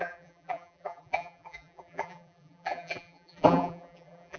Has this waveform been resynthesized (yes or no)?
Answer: yes